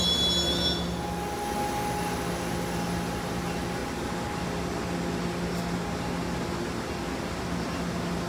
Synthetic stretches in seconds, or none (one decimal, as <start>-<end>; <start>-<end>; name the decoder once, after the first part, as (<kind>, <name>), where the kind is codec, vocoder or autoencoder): none